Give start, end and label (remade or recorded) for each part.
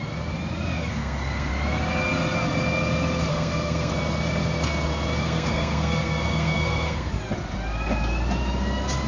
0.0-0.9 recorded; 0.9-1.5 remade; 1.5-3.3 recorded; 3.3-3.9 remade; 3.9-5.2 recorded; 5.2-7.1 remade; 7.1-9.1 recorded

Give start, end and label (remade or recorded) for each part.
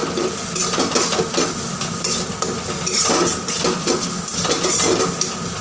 0.0-5.6 recorded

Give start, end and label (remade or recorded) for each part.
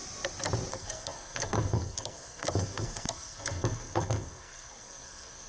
0.0-0.7 recorded; 0.7-5.5 remade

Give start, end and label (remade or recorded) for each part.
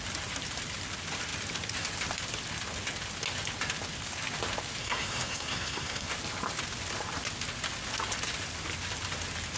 0.0-4.8 recorded; 4.8-6.1 remade; 6.1-9.6 recorded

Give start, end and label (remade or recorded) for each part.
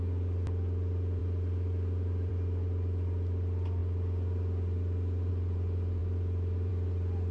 0.0-7.3 recorded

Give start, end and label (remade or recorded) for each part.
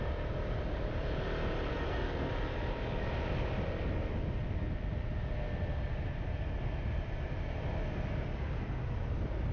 0.0-1.7 recorded; 1.7-2.3 remade; 2.3-9.5 recorded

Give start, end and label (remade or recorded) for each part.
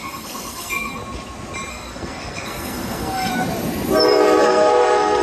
0.0-1.0 remade; 1.0-1.7 recorded; 1.7-3.3 remade; 3.3-4.4 recorded; 4.4-5.2 remade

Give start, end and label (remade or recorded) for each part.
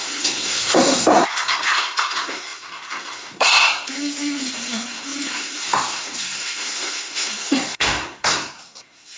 0.0-9.2 remade